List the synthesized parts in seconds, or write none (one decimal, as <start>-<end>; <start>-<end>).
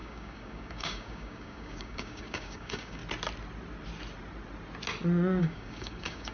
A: 0.0-3.0; 5.4-6.3